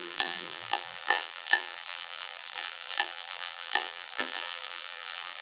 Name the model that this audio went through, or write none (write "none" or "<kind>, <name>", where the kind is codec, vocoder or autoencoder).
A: vocoder, BigVGAN v2